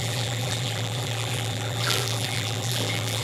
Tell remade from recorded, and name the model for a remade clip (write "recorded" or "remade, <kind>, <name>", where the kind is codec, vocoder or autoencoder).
remade, vocoder, BigVGAN v2